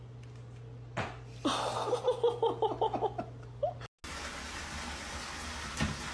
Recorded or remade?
recorded